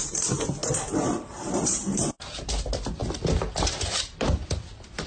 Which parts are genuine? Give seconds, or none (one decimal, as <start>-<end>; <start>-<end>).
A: 0.0-0.6; 2.1-5.1